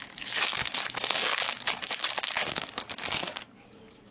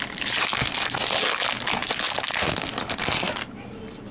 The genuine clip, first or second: second